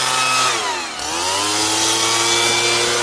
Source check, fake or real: real